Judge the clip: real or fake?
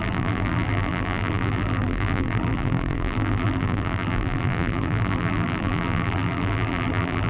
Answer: fake